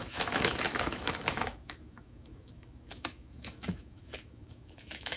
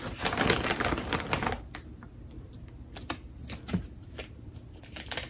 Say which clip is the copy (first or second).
first